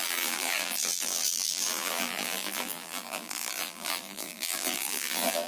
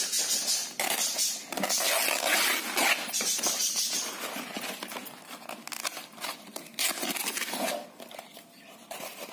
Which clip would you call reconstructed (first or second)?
first